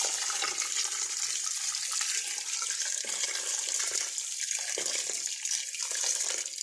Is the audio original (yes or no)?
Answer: yes